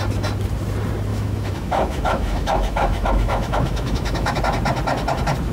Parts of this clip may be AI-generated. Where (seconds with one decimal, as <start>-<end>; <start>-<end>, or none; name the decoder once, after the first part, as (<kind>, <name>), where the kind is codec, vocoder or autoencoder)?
1.1-4.4 (autoencoder, DAC-VAE)